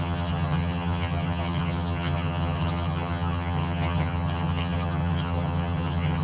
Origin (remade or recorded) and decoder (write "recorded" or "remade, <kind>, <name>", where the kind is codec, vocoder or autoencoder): remade, vocoder, HiFi-GAN